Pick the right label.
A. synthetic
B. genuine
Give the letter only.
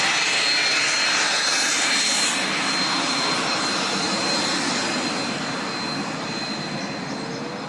B